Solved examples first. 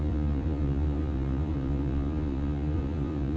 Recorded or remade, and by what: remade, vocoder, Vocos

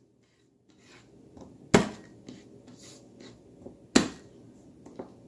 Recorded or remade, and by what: recorded